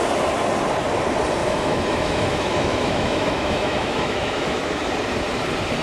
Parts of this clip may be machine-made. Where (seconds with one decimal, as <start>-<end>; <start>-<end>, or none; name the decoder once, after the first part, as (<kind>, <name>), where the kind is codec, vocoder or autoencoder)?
1.4-4.9 (autoencoder, DAC-VAE)